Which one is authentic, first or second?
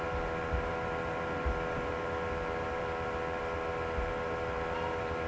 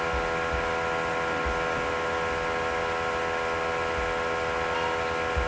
second